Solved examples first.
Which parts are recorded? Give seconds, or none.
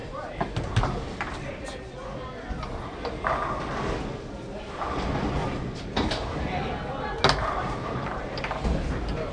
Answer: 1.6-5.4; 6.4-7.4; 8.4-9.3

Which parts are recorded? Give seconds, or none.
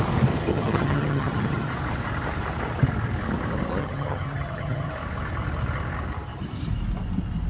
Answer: 0.0-0.5; 1.7-3.8; 4.9-7.5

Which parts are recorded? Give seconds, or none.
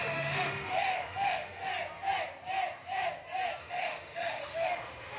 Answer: 1.7-3.6